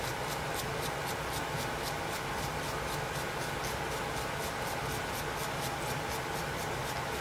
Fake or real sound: real